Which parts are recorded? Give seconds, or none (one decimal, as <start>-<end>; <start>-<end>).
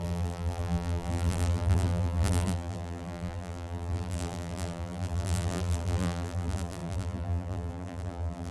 none